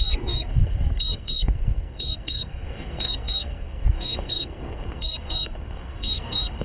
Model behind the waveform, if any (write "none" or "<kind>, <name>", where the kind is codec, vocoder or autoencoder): codec, SNAC